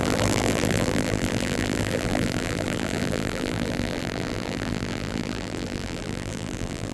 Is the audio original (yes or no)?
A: no